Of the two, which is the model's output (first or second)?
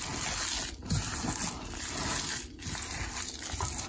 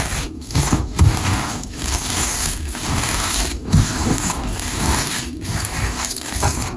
second